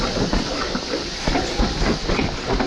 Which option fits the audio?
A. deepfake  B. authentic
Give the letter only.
B